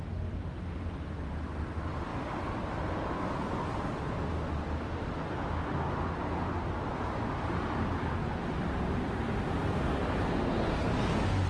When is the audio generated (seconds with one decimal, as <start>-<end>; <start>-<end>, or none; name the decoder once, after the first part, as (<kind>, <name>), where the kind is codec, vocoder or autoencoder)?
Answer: none